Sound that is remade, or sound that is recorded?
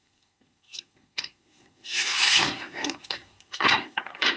remade